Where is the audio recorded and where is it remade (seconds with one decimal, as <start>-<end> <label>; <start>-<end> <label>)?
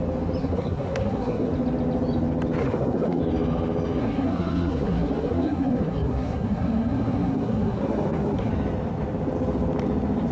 0.0-0.4 recorded; 0.4-1.5 remade; 1.5-2.6 recorded; 2.6-3.2 remade; 3.2-4.0 recorded; 4.0-8.5 remade; 8.5-10.3 recorded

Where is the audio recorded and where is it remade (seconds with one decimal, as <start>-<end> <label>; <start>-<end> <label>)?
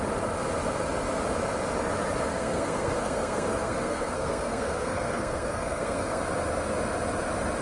0.0-2.3 recorded; 2.3-6.2 remade; 6.2-7.6 recorded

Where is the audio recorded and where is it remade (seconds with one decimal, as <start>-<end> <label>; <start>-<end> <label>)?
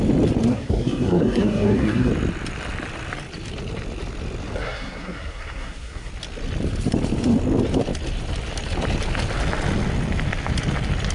0.0-0.5 recorded; 0.5-2.1 remade; 2.1-4.6 recorded; 4.6-6.1 remade; 6.1-11.1 recorded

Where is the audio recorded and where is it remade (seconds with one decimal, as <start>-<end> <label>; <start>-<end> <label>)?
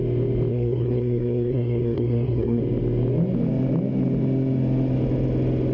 0.0-0.5 recorded; 0.5-2.6 remade; 2.6-5.7 recorded